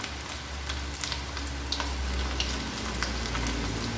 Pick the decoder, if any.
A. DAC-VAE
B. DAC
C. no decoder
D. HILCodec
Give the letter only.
C